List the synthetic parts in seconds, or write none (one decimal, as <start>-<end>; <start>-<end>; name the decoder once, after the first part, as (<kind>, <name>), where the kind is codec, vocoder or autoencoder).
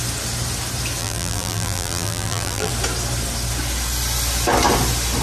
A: 1.0-2.7 (vocoder, BigVGAN v2)